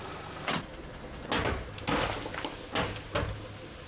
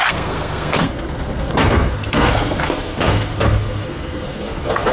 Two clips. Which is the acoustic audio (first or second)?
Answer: first